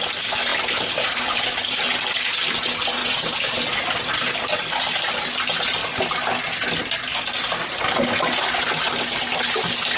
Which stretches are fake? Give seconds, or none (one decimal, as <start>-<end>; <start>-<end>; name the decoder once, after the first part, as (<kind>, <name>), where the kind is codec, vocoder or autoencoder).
0.5-1.4 (vocoder, BigVGAN v2); 3.0-5.2; 5.8-6.8